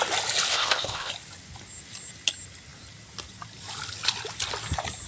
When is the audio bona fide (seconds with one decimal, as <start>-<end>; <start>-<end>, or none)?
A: 0.0-0.5; 1.1-5.1